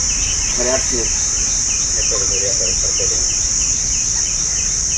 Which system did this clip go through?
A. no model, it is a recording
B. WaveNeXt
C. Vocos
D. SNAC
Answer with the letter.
A